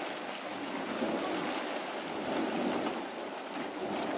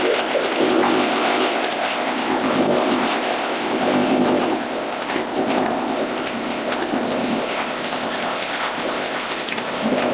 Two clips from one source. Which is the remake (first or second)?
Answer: second